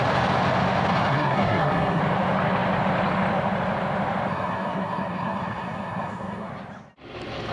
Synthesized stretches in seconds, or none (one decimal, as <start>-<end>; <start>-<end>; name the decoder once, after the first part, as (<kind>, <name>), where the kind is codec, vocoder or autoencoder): 0.9-2.0 (codec, SNAC); 4.3-6.5